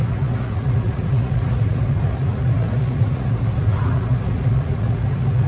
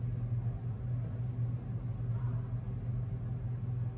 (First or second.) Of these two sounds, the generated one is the first